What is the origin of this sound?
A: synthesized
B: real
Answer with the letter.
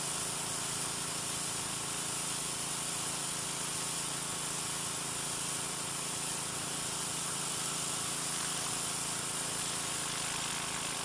B